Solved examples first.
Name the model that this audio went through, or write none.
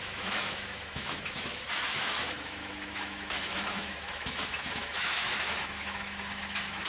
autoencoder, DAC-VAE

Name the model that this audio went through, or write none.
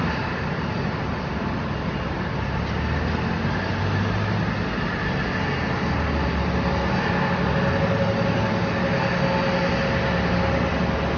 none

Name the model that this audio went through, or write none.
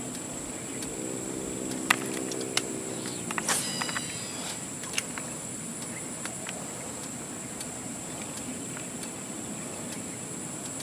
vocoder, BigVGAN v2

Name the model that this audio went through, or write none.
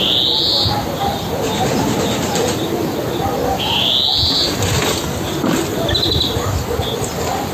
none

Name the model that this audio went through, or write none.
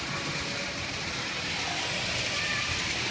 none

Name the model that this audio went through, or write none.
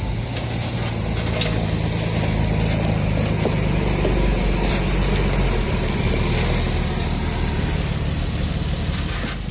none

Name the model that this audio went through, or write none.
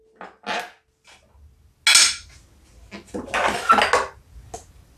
none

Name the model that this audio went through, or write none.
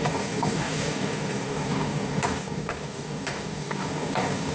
codec, DAC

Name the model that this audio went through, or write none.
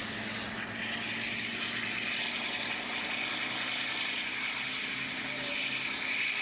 none